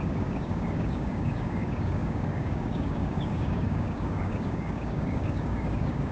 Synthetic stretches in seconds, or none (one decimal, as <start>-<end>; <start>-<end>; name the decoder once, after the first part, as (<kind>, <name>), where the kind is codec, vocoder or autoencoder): 0.0-6.1 (codec, DAC)